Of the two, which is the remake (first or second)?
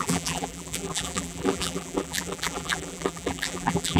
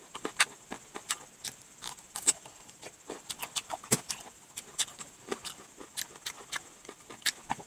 first